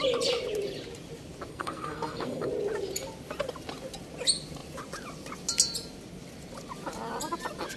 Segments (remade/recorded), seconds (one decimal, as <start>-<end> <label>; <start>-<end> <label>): 0.0-1.5 recorded; 1.5-2.5 remade; 2.5-7.8 recorded